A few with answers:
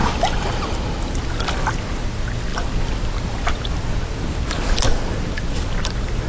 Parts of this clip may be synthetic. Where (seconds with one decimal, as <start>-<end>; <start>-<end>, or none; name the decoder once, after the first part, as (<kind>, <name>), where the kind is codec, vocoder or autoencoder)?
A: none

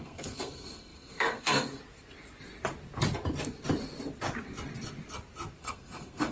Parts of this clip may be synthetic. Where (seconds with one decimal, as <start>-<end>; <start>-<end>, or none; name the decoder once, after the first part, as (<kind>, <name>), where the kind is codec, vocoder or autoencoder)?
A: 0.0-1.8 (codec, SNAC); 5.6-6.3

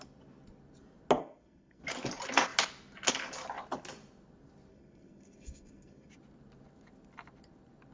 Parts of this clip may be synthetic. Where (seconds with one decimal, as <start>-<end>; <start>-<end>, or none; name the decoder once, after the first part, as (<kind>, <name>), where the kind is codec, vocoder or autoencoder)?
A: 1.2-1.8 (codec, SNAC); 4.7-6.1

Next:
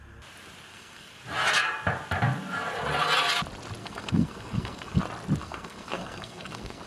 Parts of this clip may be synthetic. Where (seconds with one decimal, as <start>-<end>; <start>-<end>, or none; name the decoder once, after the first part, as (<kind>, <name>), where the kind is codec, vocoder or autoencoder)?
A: 0.7-1.2 (codec, SNAC); 3.8-5.0; 5.4-6.9

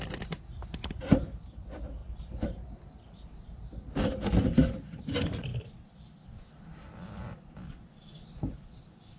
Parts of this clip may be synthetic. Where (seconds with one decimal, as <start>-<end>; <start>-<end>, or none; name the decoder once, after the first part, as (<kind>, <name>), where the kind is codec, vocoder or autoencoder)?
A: none